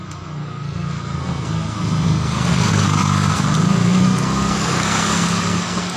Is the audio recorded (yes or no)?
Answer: no